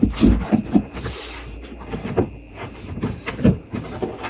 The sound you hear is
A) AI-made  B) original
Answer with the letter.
A